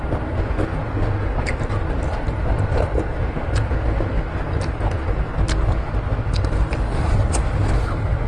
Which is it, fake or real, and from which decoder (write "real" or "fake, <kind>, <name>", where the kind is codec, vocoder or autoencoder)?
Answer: real